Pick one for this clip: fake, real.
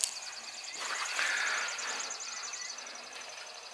real